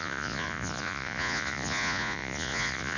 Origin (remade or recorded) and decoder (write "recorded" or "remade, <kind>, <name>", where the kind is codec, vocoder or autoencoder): remade, vocoder, Vocos